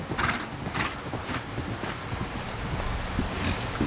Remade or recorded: recorded